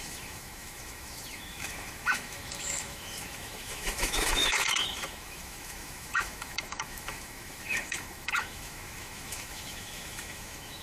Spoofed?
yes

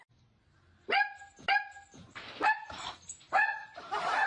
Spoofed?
no